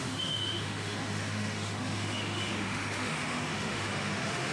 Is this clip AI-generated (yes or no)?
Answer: yes